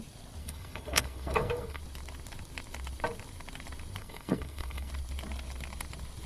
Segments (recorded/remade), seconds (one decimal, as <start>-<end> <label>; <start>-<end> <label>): 0.0-0.4 recorded; 0.4-1.8 remade; 1.8-4.0 recorded; 4.0-4.9 remade; 4.9-6.3 recorded